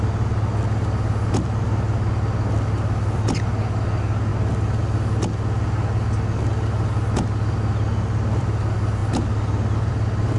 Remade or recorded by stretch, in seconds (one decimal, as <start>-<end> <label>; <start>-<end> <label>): 0.0-10.4 recorded